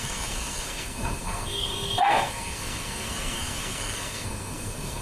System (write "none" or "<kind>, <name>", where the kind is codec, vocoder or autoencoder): codec, SNAC